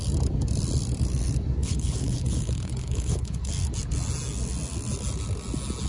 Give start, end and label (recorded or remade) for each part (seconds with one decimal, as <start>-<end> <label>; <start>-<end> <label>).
0.0-1.6 recorded; 1.6-3.5 remade; 3.5-5.9 recorded